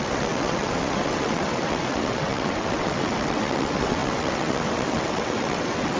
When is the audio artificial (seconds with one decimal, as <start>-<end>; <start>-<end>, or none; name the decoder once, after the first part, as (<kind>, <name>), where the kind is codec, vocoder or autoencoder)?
0.0-6.0 (vocoder, WaveNeXt)